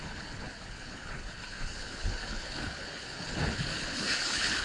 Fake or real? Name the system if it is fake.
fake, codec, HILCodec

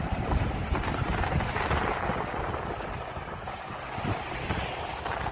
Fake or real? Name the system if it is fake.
real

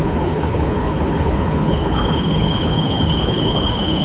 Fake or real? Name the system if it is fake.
fake, codec, HILCodec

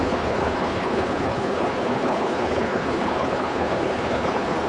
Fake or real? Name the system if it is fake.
fake, codec, HILCodec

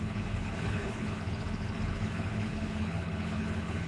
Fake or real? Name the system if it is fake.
fake, codec, HILCodec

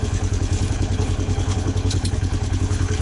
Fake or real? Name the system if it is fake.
fake, codec, HILCodec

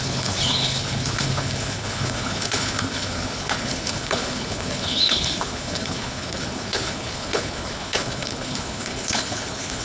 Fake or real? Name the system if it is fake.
fake, codec, HILCodec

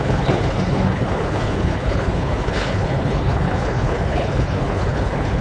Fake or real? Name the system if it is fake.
fake, codec, HILCodec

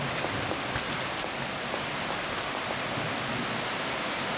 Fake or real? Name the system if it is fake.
real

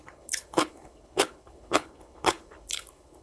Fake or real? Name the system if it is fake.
fake, codec, HILCodec